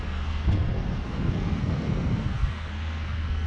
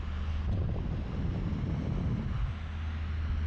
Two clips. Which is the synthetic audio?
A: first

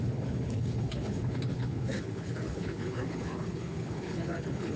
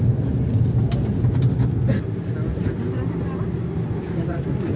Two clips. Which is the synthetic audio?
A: first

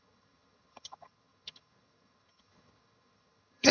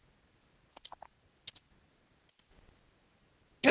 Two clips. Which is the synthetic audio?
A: first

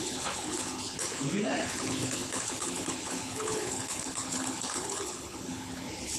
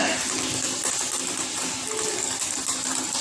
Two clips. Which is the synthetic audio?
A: first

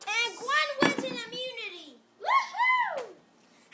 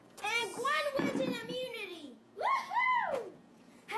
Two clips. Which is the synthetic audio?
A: second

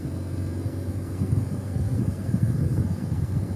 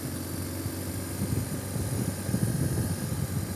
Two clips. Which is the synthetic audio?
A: first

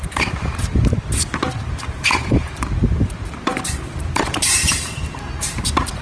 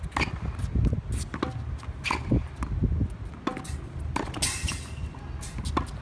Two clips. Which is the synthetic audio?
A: first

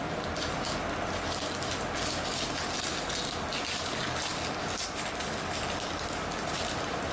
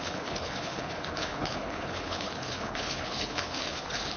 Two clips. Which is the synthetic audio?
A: second